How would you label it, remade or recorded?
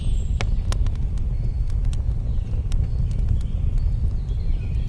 recorded